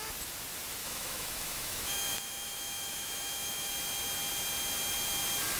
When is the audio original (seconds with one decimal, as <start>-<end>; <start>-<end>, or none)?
0.0-0.8; 3.7-5.6

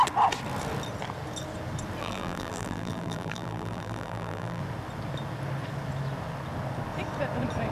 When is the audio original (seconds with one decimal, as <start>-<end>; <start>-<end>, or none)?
0.0-2.0; 4.6-7.7